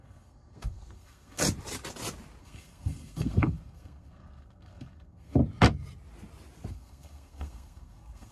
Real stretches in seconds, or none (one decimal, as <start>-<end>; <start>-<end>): 1.4-2.4; 5.4-6.7